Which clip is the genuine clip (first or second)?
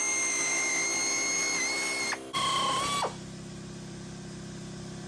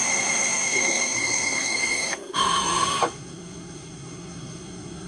first